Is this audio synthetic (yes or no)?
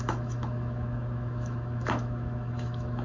yes